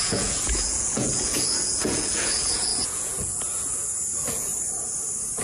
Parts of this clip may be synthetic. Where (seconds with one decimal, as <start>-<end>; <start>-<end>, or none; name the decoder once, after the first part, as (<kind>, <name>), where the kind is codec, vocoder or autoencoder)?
0.0-4.5 (vocoder, Vocos)